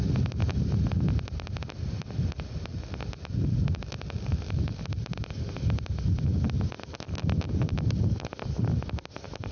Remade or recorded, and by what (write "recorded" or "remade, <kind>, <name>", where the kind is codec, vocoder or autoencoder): recorded